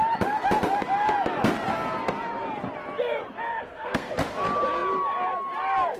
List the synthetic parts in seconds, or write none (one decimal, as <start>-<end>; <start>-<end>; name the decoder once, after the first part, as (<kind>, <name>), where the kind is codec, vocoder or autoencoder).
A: 3.5-4.1 (codec, SNAC)